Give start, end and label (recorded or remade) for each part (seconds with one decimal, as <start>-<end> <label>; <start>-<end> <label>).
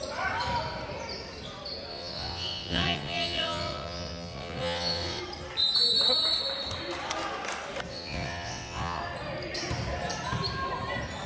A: 0.0-1.9 recorded; 1.9-5.2 remade; 5.2-7.9 recorded; 7.9-9.0 remade; 9.0-11.3 recorded